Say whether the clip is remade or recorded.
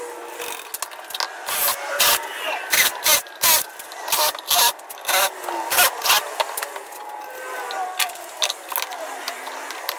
recorded